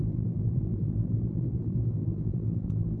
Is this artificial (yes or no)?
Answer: yes